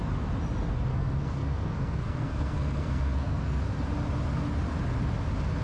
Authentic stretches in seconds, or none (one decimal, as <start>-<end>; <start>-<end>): 0.0-0.9; 3.6-5.6